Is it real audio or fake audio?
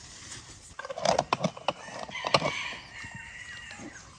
real